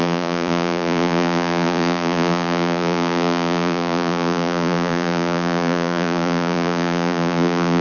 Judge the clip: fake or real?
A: fake